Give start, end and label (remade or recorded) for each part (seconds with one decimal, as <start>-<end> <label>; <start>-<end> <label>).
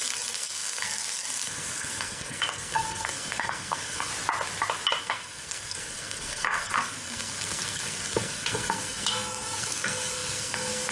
0.0-4.1 remade; 4.1-5.0 recorded; 5.0-10.9 remade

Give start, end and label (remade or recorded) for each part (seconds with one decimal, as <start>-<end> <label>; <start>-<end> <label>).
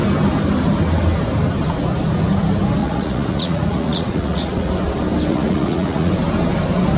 0.0-2.8 recorded; 2.8-4.7 remade; 4.7-5.3 recorded; 5.3-6.1 remade; 6.1-7.0 recorded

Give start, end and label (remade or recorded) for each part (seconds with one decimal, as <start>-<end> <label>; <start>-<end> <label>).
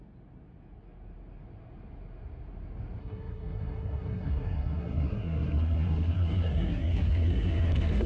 0.0-3.0 recorded; 3.0-8.1 remade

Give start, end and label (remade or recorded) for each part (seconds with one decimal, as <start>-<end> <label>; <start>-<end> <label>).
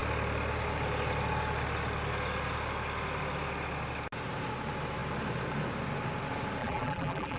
0.0-6.6 recorded; 6.6-7.4 remade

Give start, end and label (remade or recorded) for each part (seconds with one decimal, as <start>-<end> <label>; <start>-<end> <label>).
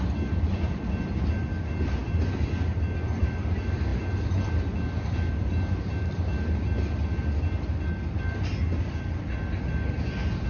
0.0-10.5 recorded